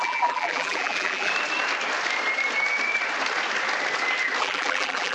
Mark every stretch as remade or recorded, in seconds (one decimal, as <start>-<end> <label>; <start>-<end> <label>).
0.0-1.3 remade; 1.3-4.4 recorded; 4.4-5.1 remade